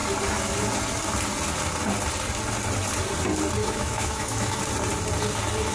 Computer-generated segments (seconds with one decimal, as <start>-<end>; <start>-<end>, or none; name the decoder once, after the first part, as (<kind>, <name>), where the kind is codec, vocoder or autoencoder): 3.6-4.6 (autoencoder, DAC-VAE)